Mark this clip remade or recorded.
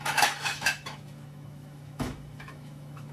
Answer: remade